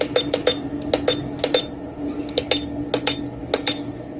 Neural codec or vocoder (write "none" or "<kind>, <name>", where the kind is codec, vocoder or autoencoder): none